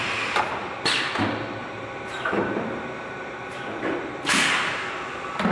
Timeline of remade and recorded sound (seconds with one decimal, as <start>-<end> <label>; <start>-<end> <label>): 0.0-0.6 recorded; 0.6-1.1 remade; 1.1-1.6 recorded; 1.6-4.9 remade; 4.9-5.5 recorded